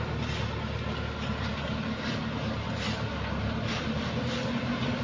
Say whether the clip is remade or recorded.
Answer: recorded